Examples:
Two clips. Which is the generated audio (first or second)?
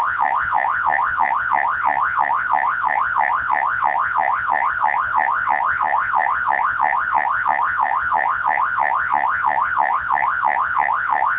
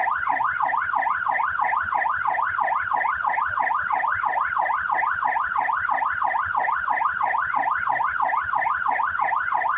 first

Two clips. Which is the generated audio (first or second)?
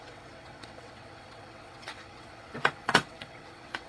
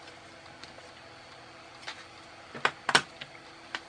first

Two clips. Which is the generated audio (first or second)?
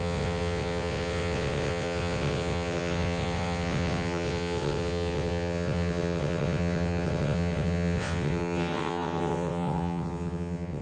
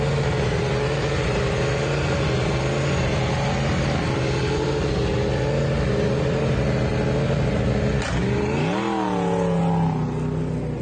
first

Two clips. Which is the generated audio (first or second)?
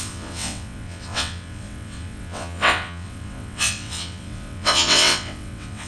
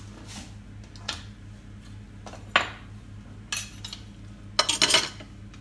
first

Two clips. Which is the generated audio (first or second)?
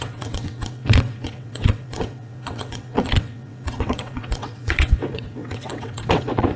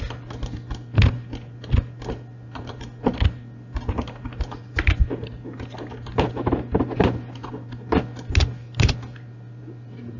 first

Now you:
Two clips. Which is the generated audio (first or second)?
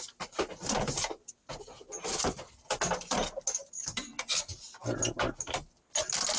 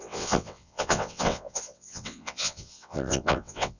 second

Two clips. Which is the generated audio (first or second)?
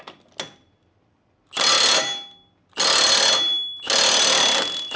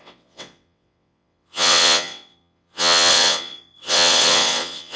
second